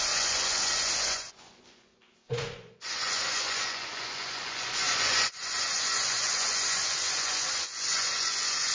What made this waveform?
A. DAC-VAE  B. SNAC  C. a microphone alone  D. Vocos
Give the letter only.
D